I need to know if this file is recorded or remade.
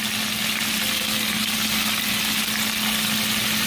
recorded